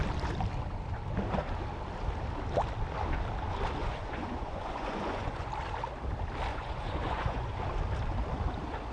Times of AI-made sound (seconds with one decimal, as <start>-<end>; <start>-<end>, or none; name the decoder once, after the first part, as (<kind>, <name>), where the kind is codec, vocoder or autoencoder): 3.8-5.5 (vocoder, Vocos); 6.5-7.6

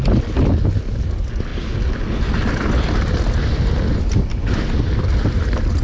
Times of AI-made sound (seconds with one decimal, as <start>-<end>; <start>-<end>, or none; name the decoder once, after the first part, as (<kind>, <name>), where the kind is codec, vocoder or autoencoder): none

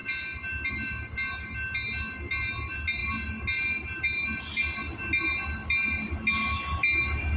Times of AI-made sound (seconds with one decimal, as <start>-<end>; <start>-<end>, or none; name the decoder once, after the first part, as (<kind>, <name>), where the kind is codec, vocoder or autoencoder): none

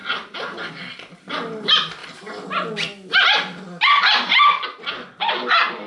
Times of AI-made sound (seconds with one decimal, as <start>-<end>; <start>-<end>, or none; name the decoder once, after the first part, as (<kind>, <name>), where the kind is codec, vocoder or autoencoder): none

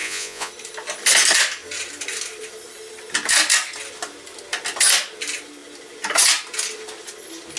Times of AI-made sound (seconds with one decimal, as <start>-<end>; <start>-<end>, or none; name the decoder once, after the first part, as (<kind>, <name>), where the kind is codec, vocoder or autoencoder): 0.0-0.5 (vocoder, Vocos)